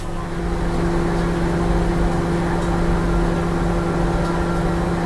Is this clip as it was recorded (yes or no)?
yes